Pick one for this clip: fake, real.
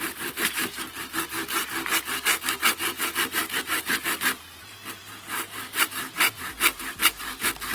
fake